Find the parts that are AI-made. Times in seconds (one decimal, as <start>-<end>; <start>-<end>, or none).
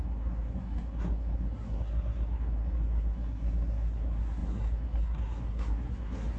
0.0-6.4